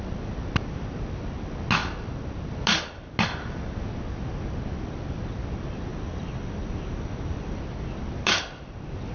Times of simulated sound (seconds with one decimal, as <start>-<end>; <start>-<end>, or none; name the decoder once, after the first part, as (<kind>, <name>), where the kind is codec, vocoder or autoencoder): 5.9-7.6 (vocoder, BigVGAN v2)